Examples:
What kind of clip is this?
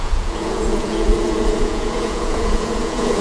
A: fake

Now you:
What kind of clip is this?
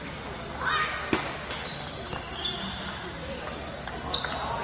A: real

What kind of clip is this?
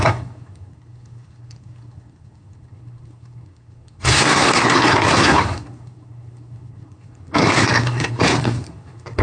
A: fake